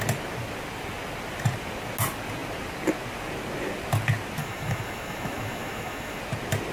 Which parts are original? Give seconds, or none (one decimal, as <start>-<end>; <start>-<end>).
0.0-4.4; 6.2-6.7